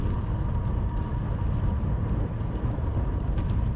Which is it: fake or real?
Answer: real